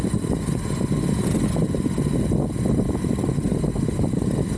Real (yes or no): yes